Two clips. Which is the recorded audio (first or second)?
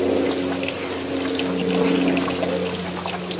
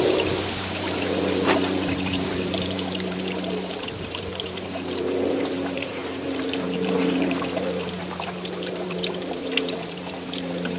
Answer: first